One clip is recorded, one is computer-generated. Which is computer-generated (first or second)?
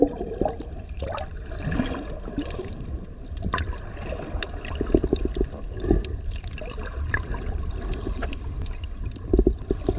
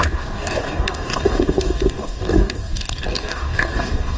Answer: second